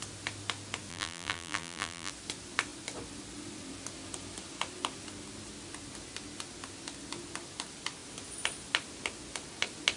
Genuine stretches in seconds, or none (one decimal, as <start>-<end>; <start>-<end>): 0.0-0.9; 2.1-10.0